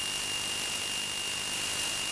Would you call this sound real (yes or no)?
yes